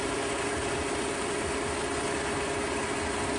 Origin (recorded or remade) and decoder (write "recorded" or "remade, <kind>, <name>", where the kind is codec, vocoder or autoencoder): recorded